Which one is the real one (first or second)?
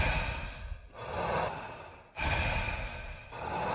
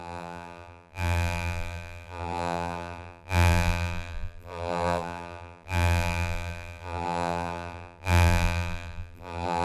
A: first